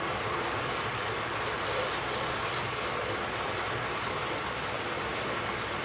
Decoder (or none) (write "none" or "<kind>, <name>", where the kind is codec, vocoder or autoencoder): none